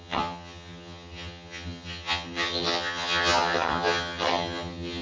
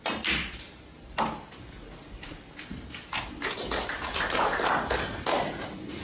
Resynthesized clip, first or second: first